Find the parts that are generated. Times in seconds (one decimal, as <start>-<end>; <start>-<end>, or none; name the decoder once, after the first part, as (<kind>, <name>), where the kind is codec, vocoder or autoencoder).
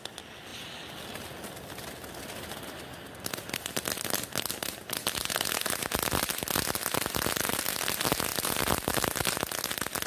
8.3-9.2 (vocoder, BigVGAN v2)